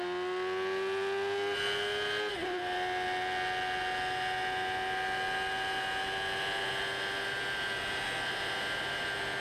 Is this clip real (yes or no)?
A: yes